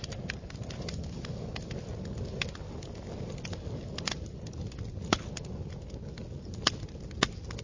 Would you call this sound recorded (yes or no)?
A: yes